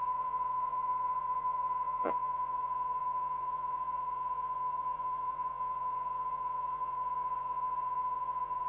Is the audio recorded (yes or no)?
no